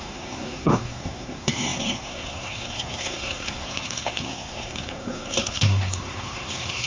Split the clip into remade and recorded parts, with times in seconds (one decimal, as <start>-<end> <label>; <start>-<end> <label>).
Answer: 0.0-6.9 remade